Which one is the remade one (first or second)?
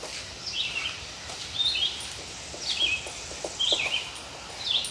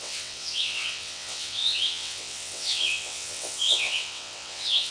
second